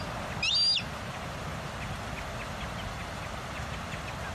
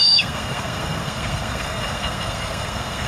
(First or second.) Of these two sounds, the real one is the first